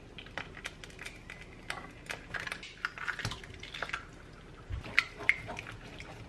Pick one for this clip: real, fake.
real